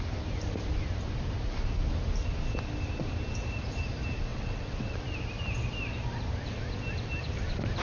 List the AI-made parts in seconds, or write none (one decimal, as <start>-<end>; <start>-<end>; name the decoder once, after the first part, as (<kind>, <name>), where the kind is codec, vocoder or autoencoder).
4.3-5.0 (vocoder, WaveNeXt)